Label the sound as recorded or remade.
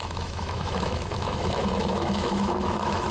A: remade